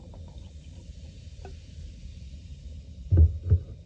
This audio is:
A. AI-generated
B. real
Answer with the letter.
B